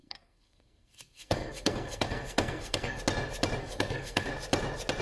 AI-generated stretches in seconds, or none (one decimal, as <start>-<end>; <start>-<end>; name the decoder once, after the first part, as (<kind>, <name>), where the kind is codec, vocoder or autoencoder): 0.0-3.0 (codec, SNAC); 3.6-4.3